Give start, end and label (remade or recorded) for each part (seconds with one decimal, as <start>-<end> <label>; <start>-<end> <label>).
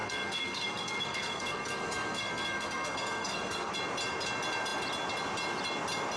0.0-3.7 remade; 3.7-6.2 recorded